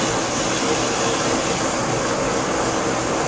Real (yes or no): yes